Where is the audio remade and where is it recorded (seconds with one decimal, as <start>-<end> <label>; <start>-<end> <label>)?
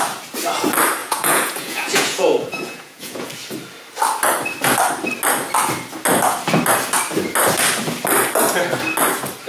0.0-1.0 recorded; 1.0-3.3 remade; 3.3-9.5 recorded